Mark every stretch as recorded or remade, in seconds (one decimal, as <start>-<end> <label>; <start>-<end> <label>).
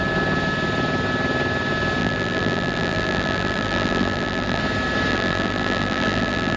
0.0-2.0 recorded; 2.0-4.6 remade; 4.6-5.1 recorded; 5.1-6.6 remade